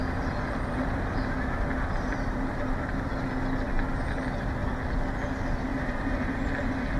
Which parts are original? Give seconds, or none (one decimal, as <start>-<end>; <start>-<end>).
3.0-5.7; 6.6-7.0